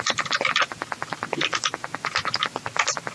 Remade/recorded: recorded